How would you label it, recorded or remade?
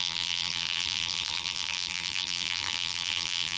remade